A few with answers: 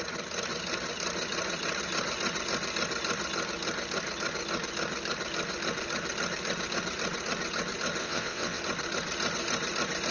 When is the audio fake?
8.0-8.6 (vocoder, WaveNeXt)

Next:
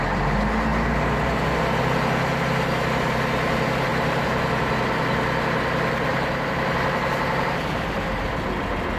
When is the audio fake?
3.9-4.5 (vocoder, BigVGAN v2); 6.1-8.3

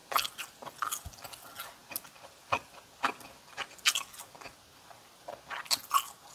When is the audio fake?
none

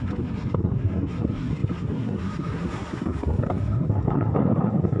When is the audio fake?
0.0-5.0 (codec, SNAC)

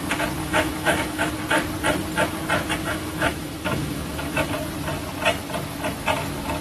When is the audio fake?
0.4-1.3 (autoencoder, DAC-VAE); 2.8-4.5

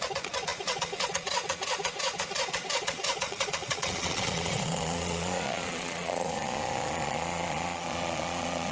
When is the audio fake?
0.0-8.7 (vocoder, Vocos)

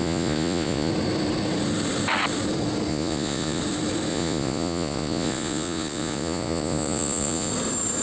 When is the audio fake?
0.0-0.9 (vocoder, Vocos); 2.9-3.6; 4.1-7.5